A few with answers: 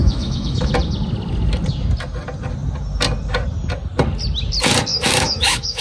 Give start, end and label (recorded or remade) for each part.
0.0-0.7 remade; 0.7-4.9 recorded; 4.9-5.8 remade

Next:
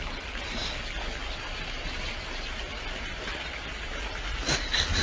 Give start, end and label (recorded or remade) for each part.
0.0-5.0 recorded

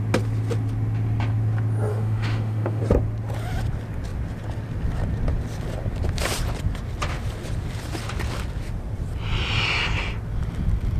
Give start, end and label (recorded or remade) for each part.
0.0-1.9 recorded; 1.9-2.8 remade; 2.8-11.0 recorded

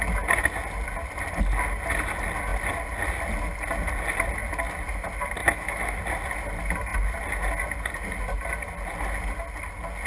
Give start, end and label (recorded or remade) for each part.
0.0-5.4 recorded; 5.4-6.0 remade; 6.0-10.1 recorded

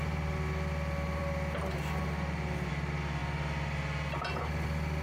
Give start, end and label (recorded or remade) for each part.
0.0-5.0 recorded